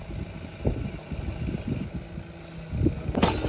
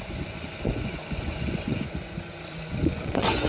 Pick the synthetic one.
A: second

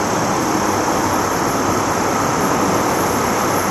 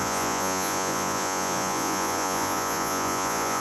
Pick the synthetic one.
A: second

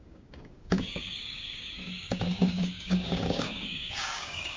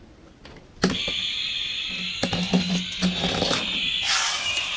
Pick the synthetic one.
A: first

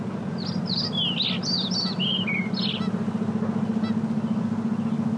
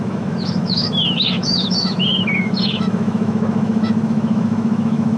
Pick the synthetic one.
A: second